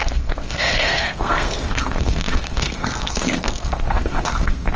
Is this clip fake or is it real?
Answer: fake